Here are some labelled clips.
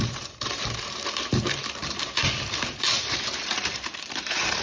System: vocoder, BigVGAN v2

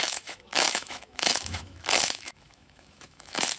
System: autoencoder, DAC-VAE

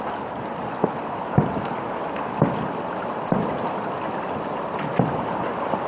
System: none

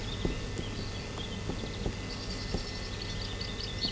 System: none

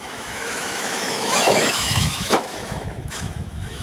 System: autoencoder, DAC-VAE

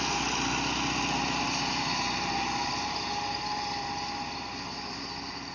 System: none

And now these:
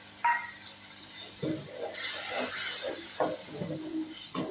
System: none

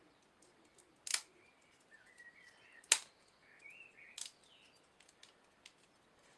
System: none